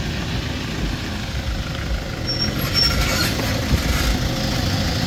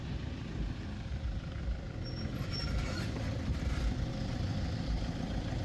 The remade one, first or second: second